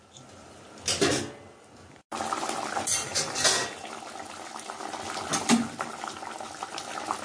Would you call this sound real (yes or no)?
yes